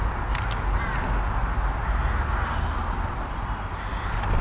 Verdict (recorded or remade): recorded